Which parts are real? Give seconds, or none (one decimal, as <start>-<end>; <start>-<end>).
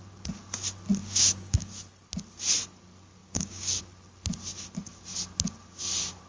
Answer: 0.0-1.0; 1.7-3.2; 3.8-6.3